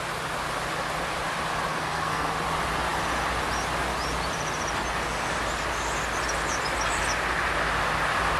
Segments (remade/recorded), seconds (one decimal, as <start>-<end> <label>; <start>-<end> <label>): 0.0-1.7 recorded; 1.7-2.3 remade; 2.3-8.4 recorded